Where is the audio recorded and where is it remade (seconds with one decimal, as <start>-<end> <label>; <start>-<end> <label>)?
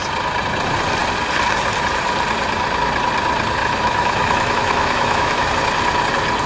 0.0-3.6 recorded; 3.6-5.5 remade; 5.5-6.5 recorded